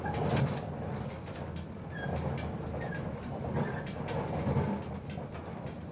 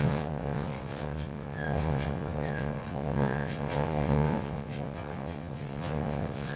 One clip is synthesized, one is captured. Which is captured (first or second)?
first